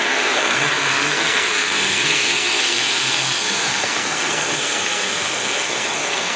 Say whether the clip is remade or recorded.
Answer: remade